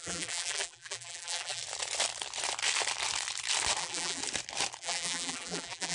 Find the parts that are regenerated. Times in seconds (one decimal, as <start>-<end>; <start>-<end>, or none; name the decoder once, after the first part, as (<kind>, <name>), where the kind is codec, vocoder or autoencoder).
0.0-1.6 (vocoder, BigVGAN v2); 3.8-4.2; 4.8-5.9